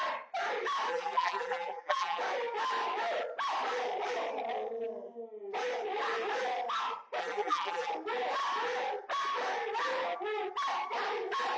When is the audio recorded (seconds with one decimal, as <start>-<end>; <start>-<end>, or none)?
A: 0.0-0.9; 2.2-7.2; 7.9-11.6